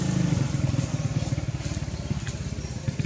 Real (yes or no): yes